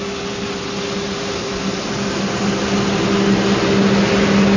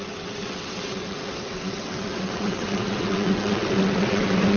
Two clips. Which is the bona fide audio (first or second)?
first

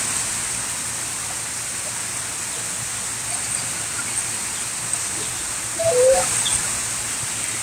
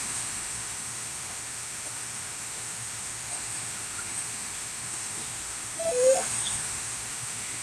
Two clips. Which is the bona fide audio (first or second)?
first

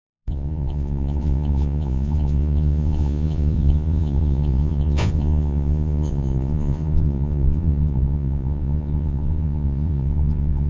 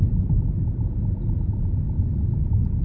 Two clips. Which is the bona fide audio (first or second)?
second